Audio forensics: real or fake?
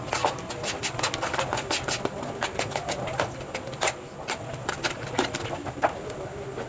real